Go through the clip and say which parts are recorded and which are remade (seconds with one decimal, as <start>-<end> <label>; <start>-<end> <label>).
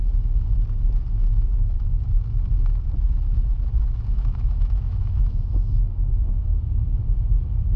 0.0-4.1 recorded; 4.1-6.5 remade; 6.5-7.8 recorded